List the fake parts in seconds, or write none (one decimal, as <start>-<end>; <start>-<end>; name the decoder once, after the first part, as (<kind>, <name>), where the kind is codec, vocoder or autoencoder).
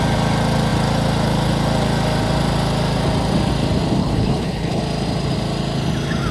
4.0-4.8 (codec, HILCodec)